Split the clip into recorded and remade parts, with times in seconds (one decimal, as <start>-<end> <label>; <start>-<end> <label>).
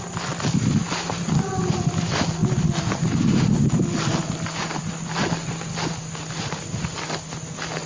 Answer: 0.0-7.9 recorded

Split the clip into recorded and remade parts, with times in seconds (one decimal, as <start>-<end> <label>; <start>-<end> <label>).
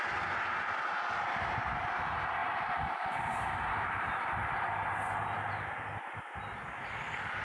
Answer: 0.0-2.4 recorded; 2.4-4.1 remade; 4.1-7.4 recorded